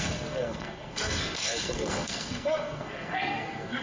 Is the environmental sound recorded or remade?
remade